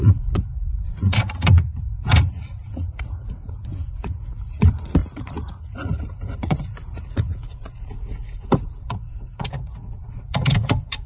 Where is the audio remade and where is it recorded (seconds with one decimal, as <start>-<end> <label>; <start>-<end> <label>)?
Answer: 0.0-11.1 remade